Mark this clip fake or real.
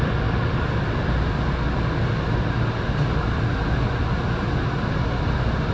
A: real